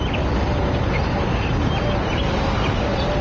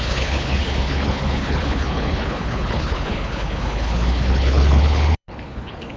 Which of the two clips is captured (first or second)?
first